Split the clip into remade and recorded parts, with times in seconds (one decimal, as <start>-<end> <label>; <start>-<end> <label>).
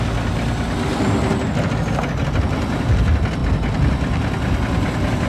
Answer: 0.0-5.3 recorded